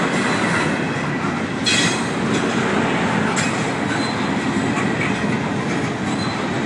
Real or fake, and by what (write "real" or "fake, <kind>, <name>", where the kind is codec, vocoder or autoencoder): real